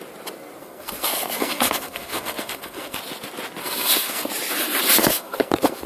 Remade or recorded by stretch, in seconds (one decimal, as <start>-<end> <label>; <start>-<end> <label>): 0.0-0.6 recorded; 0.6-3.0 remade; 3.0-3.6 recorded; 3.6-4.3 remade; 4.3-5.0 recorded; 5.0-5.9 remade